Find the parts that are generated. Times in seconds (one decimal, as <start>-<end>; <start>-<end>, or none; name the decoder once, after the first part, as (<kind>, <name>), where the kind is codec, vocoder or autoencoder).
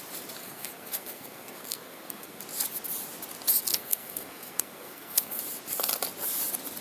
0.4-2.4 (codec, SNAC); 3.7-5.4